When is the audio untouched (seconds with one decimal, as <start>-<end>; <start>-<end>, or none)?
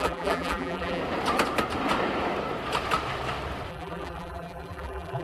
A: 1.0-3.7